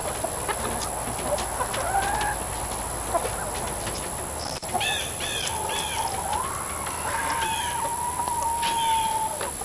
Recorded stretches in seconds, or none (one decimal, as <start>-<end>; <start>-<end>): 0.0-9.6